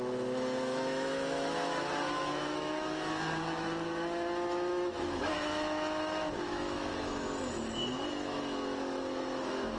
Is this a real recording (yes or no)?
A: no